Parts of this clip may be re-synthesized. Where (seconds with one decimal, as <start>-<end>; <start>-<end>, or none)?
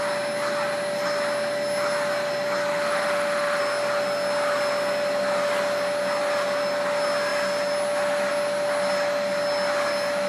2.7-3.6